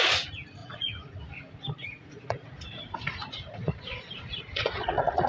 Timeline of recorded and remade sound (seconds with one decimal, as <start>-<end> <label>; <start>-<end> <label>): 0.0-0.6 recorded; 0.6-1.3 remade; 1.3-1.8 recorded; 1.8-5.3 remade